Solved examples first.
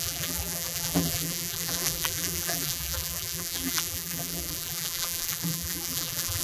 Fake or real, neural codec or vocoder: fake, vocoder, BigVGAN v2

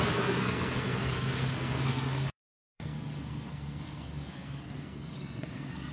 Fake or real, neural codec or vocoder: fake, codec, SNAC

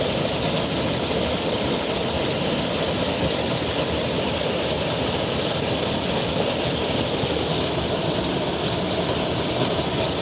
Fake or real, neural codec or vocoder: real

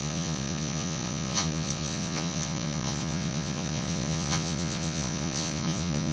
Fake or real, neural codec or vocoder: fake, vocoder, Vocos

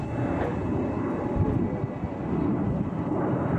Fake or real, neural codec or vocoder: fake, vocoder, BigVGAN v2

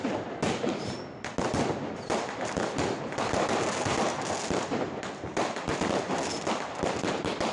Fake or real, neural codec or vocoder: real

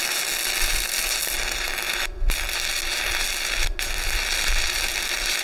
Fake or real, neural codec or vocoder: real